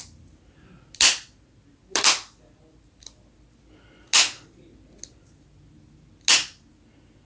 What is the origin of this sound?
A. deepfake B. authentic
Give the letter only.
B